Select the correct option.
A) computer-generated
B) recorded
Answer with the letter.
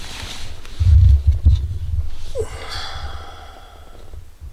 B